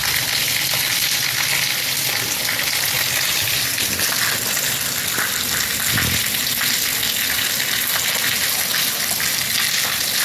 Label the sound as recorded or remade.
recorded